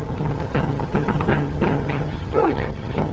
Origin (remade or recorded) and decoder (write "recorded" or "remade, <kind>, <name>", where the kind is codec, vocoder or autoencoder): remade, vocoder, HiFi-GAN